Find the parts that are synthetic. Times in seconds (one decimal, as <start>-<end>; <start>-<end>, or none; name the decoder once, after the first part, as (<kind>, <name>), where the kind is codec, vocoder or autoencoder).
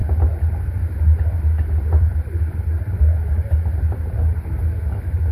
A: 0.0-3.2 (vocoder, BigVGAN v2)